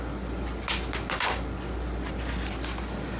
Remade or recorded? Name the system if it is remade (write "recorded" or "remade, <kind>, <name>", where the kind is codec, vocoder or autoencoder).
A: recorded